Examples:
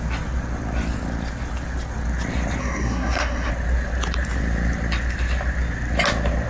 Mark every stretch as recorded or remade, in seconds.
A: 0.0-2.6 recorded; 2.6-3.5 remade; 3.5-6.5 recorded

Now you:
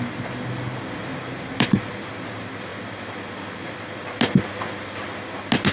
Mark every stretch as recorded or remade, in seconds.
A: 0.0-1.1 recorded; 1.1-1.8 remade; 1.8-5.7 recorded

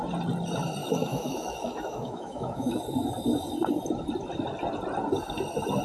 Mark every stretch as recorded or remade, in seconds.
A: 0.0-0.8 recorded; 0.8-2.8 remade; 2.8-5.8 recorded

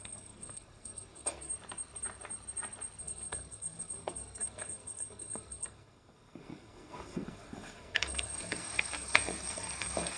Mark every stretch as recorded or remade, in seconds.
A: 0.0-1.5 remade; 1.5-3.0 recorded; 3.0-10.2 remade